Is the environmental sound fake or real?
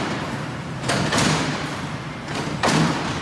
fake